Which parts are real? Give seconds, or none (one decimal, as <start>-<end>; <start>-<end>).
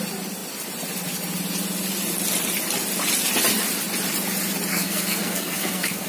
0.0-4.7